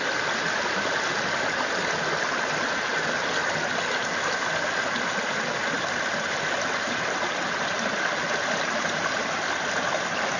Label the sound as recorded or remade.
recorded